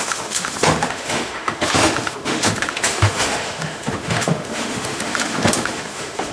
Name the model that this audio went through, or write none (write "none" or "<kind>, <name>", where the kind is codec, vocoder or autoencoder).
autoencoder, DAC-VAE